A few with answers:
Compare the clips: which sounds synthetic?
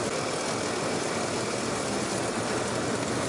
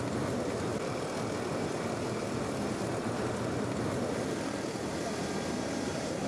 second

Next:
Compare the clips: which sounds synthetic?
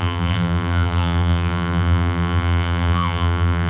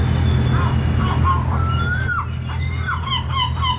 first